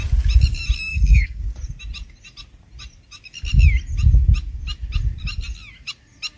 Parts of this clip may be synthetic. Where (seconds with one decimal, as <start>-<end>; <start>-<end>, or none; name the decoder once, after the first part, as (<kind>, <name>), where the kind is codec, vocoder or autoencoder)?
0.9-1.4 (codec, SNAC)